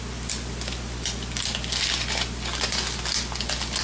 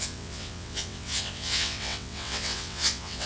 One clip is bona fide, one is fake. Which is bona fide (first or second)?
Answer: first